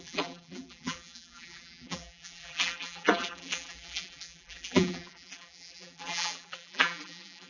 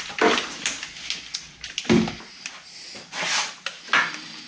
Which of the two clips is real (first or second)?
second